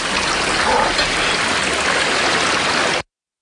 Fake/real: real